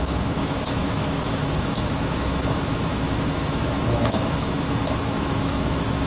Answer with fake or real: fake